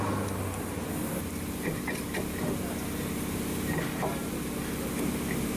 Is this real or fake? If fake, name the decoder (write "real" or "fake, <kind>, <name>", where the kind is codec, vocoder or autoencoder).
real